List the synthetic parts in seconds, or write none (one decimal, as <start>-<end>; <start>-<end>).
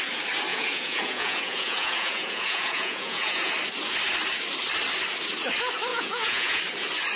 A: 0.5-3.5; 5.9-6.6